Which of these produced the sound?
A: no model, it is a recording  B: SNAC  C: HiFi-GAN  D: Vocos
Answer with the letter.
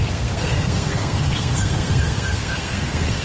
B